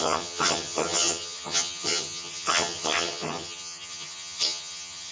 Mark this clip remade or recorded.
remade